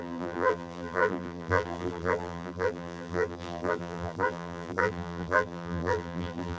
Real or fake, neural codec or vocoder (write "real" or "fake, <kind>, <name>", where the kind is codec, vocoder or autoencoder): fake, vocoder, BigVGAN v2